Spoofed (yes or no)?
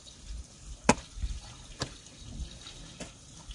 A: no